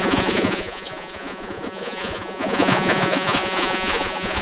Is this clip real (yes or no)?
no